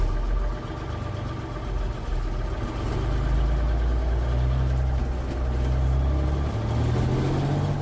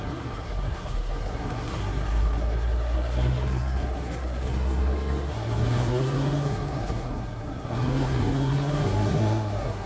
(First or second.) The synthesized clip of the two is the second